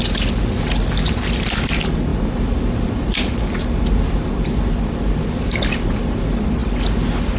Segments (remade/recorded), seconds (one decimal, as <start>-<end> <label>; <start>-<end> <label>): 0.0-7.4 recorded

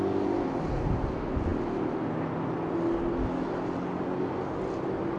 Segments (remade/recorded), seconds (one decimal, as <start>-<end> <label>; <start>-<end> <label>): 0.0-5.2 recorded

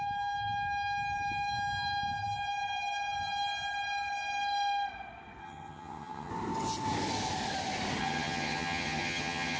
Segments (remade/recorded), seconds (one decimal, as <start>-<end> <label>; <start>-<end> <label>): 0.0-5.4 recorded; 5.4-6.3 remade; 6.3-8.0 recorded; 8.0-9.6 remade

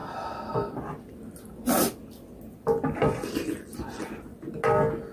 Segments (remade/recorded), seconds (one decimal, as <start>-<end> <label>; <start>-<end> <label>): 0.0-2.5 recorded; 2.5-4.5 remade; 4.5-5.1 recorded

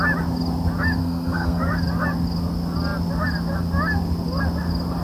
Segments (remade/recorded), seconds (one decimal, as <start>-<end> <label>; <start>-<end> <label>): 0.0-1.0 recorded; 1.0-1.6 remade; 1.6-5.0 recorded

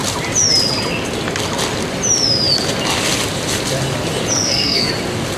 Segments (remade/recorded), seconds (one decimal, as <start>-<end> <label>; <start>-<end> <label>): 0.0-4.3 recorded; 4.3-4.9 remade; 4.9-5.4 recorded

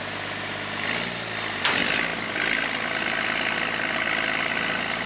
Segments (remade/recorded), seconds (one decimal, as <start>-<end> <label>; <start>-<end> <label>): 0.0-5.1 recorded